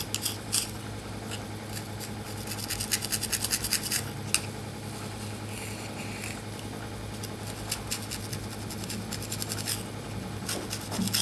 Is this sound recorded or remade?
recorded